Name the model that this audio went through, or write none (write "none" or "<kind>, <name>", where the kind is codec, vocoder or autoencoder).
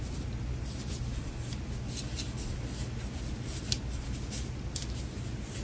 none